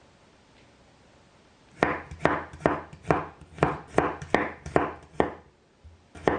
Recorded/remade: recorded